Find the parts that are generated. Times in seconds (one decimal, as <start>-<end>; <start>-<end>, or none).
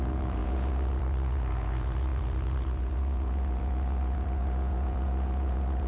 0.0-5.9